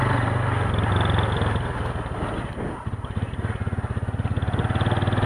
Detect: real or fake real